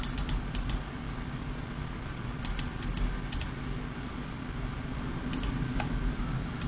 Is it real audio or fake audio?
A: real